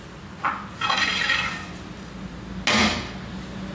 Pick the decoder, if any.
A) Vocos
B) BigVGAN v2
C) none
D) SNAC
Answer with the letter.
C